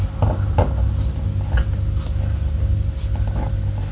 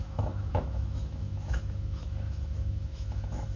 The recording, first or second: first